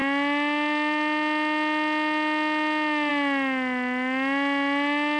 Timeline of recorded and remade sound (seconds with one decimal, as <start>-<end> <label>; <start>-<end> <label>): 0.0-5.2 recorded